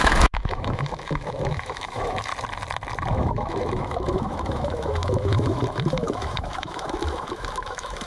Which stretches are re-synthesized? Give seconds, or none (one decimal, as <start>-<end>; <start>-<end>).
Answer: 0.0-2.3; 3.1-8.1